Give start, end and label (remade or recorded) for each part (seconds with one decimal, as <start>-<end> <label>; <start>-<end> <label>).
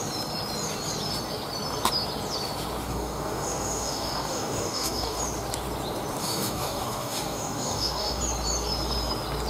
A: 0.0-2.9 recorded; 2.9-5.2 remade; 5.2-6.2 recorded; 6.2-8.2 remade; 8.2-9.5 recorded